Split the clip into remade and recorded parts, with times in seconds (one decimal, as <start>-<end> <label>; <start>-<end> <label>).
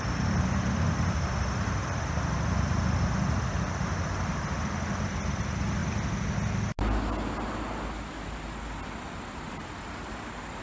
0.0-10.6 recorded